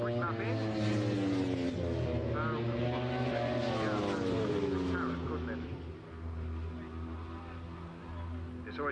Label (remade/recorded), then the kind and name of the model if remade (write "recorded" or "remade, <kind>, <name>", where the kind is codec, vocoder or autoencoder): recorded